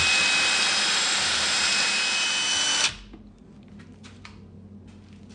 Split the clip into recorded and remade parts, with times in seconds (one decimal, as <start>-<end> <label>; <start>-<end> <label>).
0.0-5.3 recorded